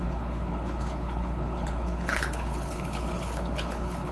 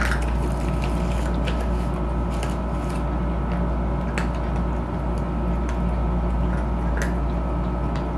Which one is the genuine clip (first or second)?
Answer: second